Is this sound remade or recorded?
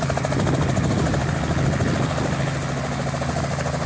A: recorded